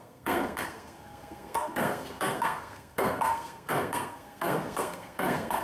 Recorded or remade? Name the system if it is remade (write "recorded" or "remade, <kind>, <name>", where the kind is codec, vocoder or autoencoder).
remade, codec, SNAC